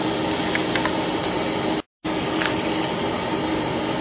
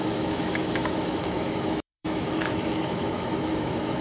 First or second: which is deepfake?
second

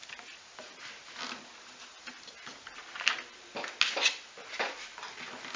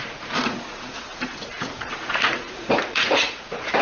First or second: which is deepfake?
second